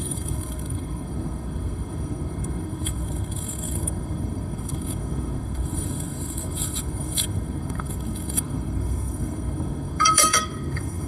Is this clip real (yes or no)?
no